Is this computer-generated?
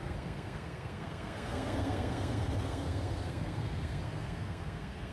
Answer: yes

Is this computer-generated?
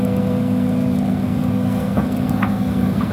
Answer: yes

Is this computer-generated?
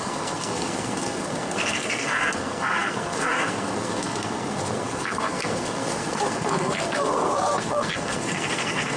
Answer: yes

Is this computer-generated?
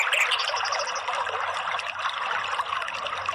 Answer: no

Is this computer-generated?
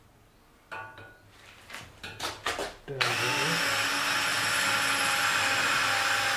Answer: no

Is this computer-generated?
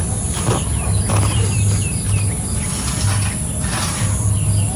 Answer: no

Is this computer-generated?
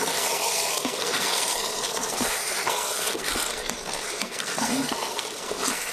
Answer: yes